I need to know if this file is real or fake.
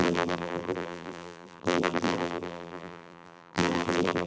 fake